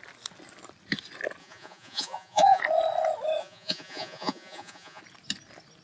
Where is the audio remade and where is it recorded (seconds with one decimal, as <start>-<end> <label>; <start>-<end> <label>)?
0.0-1.4 recorded; 1.4-2.6 remade; 2.6-3.4 recorded; 3.4-5.0 remade; 5.0-5.8 recorded